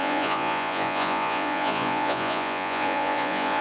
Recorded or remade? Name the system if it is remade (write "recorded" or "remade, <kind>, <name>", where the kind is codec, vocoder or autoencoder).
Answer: remade, vocoder, Vocos